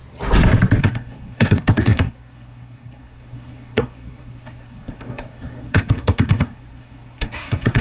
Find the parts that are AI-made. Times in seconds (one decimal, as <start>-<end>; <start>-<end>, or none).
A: 0.8-7.8